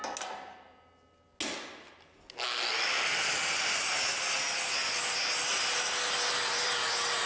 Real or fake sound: real